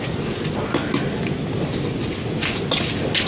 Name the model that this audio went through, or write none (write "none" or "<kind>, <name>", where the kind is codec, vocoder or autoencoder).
none